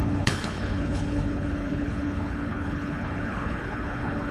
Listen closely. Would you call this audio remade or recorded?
remade